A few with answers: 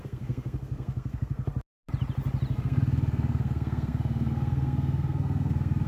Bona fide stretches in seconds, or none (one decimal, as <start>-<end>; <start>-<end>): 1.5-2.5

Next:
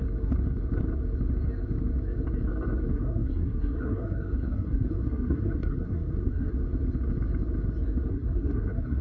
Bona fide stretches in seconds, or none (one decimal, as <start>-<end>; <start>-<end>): 0.0-2.9; 6.5-8.1

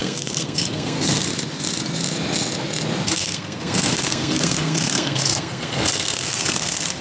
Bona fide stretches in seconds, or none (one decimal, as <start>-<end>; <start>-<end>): 1.3-3.1

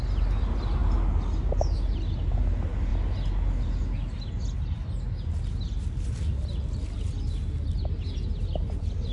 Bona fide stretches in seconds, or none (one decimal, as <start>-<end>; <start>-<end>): 0.0-9.1